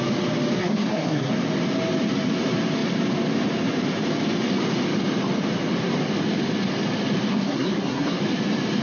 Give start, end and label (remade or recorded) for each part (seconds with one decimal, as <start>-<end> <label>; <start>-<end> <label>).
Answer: 0.0-0.6 recorded; 0.6-1.3 remade; 1.3-7.3 recorded; 7.3-8.2 remade; 8.2-8.8 recorded